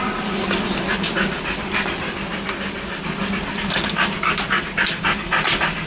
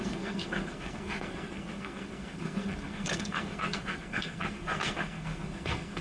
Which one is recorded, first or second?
first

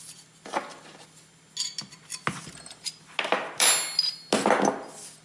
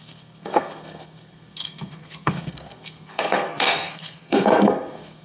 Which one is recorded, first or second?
first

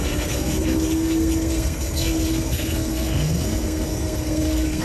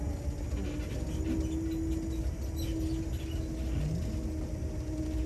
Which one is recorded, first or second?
second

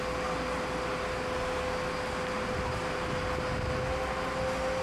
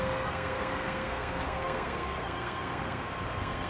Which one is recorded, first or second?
first